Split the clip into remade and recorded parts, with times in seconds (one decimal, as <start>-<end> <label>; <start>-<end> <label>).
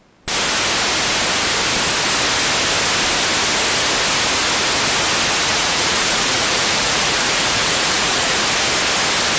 0.0-5.5 recorded; 5.5-8.4 remade; 8.4-9.4 recorded